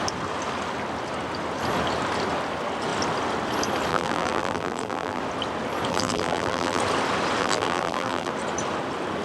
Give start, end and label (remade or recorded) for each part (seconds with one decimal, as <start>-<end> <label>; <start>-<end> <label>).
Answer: 0.0-3.9 recorded; 3.9-5.2 remade; 5.2-5.9 recorded; 5.9-6.8 remade; 6.8-7.4 recorded; 7.4-8.3 remade; 8.3-9.2 recorded